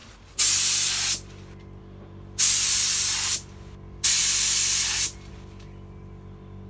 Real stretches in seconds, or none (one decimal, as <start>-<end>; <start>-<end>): 0.0-6.7